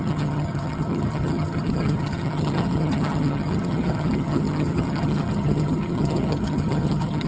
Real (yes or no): no